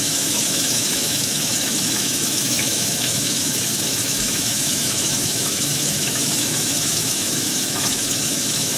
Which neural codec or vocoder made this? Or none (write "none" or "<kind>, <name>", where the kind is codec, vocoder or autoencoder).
autoencoder, DAC-VAE